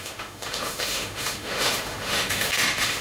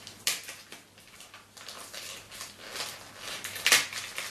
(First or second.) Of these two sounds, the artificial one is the first